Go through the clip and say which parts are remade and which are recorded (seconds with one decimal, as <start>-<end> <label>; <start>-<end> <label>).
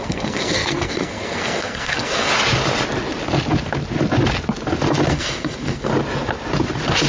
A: 0.0-2.3 remade; 2.3-5.1 recorded; 5.1-5.9 remade; 5.9-7.1 recorded